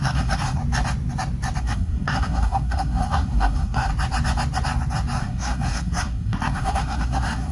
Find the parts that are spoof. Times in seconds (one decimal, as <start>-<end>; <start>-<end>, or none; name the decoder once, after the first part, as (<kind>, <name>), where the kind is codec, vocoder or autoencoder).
0.0-0.6 (codec, SNAC); 1.6-3.9; 5.2-7.5